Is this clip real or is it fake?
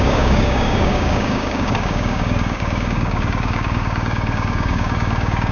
fake